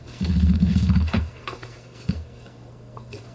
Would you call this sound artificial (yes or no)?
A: yes